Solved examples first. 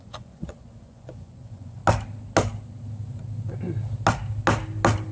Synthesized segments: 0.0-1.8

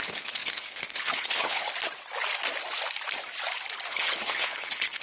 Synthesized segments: 0.0-1.7; 3.9-5.0

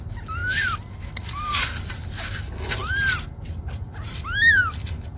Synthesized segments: none

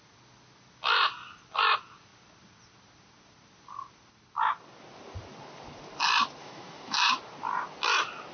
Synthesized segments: 6.4-7.1

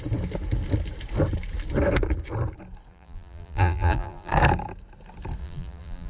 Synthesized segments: 2.9-4.3; 5.4-6.1

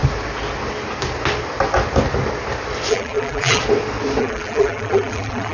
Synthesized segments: 2.9-3.6; 4.2-5.5

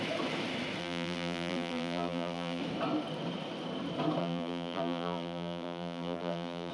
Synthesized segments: 0.8-2.6; 4.2-6.7